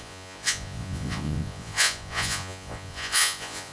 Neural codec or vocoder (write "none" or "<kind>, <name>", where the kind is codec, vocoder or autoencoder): vocoder, Vocos